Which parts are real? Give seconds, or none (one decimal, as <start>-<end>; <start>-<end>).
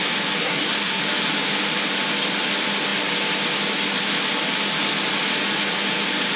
0.0-0.4; 1.0-6.4